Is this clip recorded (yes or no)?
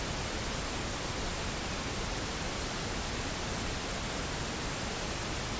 yes